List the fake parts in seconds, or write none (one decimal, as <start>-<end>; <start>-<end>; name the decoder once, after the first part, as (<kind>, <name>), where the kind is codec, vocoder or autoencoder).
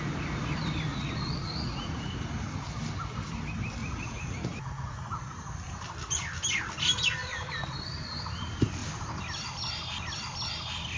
0.9-2.1 (vocoder, Vocos); 3.8-5.2